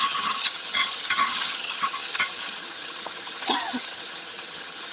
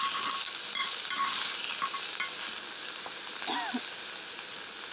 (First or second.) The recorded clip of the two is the second